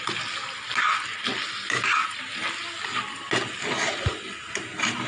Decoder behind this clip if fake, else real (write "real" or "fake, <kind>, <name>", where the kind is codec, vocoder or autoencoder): real